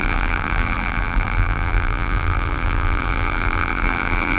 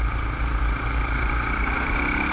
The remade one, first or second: first